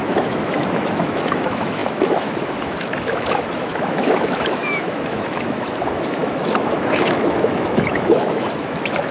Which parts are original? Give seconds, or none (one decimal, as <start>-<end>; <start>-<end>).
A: none